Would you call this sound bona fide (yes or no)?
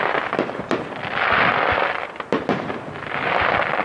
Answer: yes